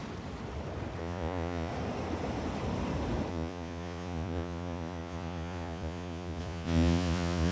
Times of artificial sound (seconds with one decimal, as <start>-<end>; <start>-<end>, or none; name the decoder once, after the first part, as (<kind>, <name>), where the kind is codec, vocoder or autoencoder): 1.0-1.7 (vocoder, Vocos); 3.3-7.5